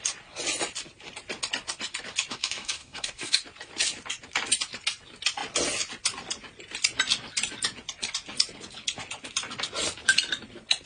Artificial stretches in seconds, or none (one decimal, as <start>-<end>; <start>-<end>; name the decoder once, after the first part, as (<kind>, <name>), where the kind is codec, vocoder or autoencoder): 2.3-3.4 (codec, DAC)